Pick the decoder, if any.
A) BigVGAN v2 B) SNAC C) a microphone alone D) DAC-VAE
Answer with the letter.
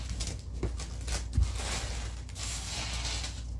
C